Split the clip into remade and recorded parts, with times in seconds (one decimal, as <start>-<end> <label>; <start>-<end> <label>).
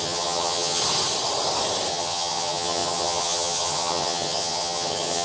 0.0-0.8 remade; 0.8-1.9 recorded; 1.9-5.2 remade